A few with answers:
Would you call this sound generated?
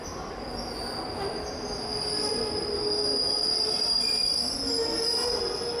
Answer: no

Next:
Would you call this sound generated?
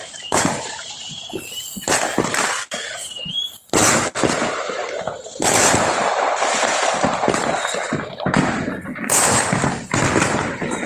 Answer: yes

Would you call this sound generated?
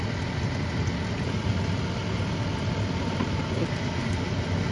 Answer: no